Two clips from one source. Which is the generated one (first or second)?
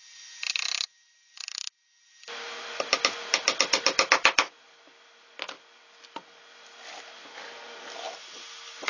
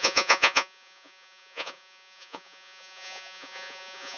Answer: second